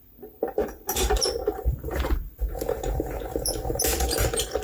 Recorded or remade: remade